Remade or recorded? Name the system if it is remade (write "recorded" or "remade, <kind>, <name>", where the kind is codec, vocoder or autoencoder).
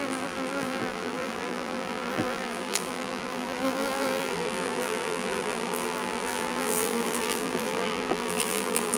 remade, vocoder, BigVGAN v2